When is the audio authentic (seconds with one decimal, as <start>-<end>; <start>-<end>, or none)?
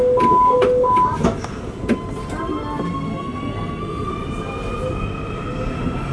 0.0-3.1; 4.1-6.1